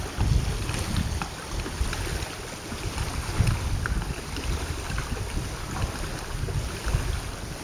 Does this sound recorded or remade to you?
recorded